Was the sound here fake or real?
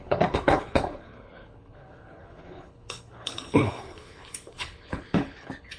fake